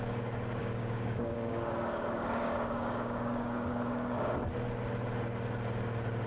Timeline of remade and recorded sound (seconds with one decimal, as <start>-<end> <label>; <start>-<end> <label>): 0.0-0.6 recorded; 0.6-4.4 remade; 4.4-6.3 recorded